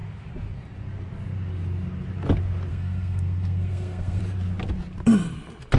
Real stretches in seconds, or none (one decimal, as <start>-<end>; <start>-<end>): 0.0-2.7; 4.2-5.8